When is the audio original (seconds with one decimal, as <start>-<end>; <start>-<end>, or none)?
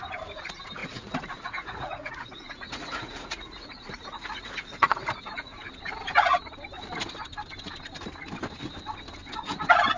0.0-0.8; 5.7-10.0